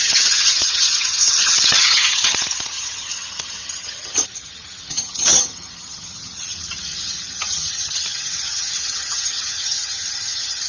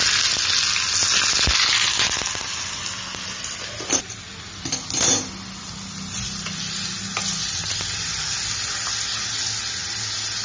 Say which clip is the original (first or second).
second